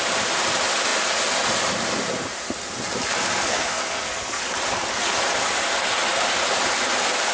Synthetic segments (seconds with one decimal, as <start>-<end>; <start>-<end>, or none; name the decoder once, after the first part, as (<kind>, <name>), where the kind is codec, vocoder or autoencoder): 3.4-4.4 (codec, SNAC)